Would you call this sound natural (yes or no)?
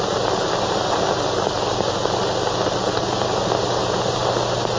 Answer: yes